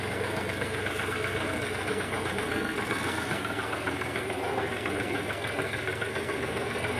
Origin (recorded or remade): remade